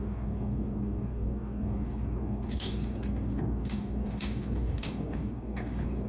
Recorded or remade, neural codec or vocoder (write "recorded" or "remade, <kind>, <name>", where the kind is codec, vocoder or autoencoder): remade, codec, DAC